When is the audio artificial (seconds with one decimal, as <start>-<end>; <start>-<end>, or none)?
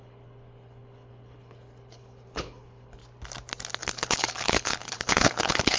0.0-3.0; 3.8-5.8